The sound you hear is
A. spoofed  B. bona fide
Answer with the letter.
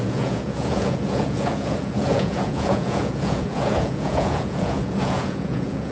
A